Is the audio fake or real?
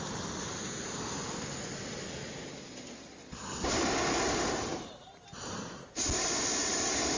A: real